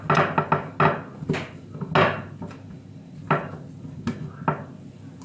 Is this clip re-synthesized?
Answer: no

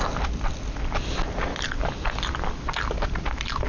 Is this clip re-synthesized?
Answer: no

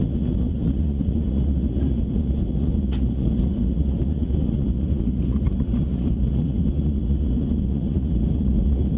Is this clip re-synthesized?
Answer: yes